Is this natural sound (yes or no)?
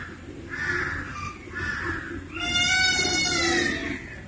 yes